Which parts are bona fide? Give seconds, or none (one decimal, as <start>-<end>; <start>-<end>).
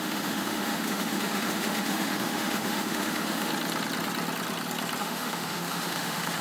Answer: 3.5-5.0